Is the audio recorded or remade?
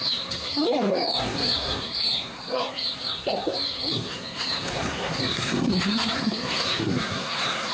remade